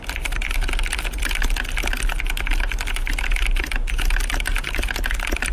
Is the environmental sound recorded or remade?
recorded